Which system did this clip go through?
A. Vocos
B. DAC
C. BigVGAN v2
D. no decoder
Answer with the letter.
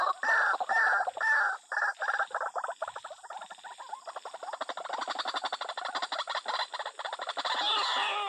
D